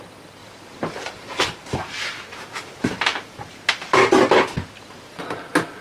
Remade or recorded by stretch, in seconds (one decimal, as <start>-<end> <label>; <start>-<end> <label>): 0.0-0.4 recorded; 0.4-3.7 remade; 3.7-5.8 recorded